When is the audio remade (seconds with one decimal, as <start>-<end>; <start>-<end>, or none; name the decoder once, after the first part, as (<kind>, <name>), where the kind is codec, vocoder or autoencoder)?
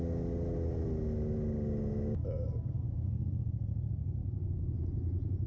4.2-4.7 (codec, DAC)